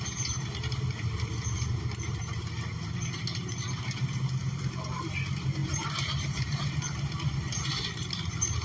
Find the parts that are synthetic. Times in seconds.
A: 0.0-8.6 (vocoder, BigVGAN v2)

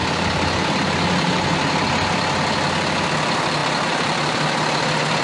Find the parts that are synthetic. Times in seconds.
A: none

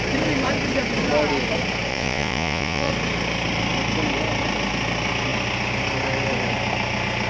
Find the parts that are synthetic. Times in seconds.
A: 1.9-2.9 (vocoder, Vocos)

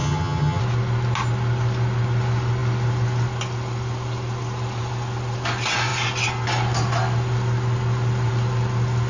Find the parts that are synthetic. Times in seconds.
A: 0.0-0.6 (vocoder, HiFi-GAN)

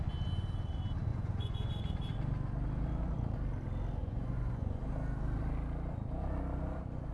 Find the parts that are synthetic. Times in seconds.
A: 1.1-1.7 (vocoder, Vocos); 4.0-4.8